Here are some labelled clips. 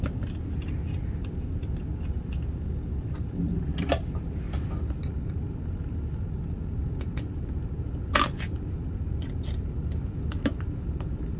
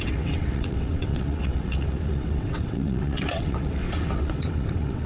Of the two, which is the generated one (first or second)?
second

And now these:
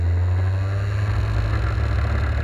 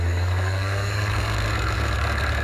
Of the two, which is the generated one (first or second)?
second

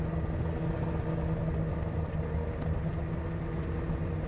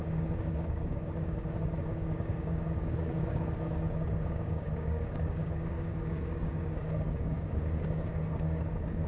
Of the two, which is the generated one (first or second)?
second